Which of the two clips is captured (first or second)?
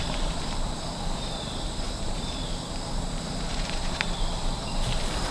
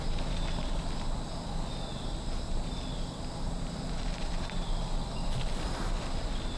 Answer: second